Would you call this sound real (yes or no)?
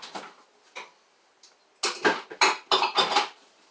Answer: yes